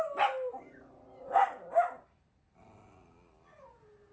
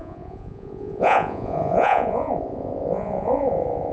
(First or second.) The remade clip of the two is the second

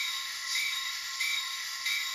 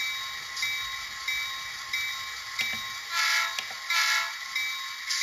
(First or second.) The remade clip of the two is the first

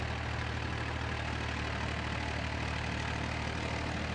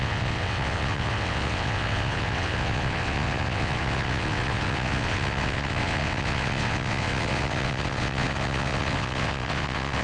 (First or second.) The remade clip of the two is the second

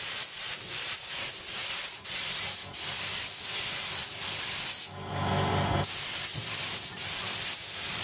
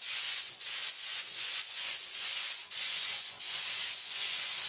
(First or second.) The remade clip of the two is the second